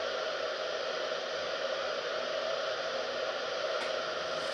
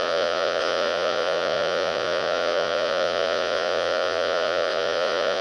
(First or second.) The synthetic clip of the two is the second